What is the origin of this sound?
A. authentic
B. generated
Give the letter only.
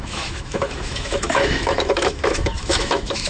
B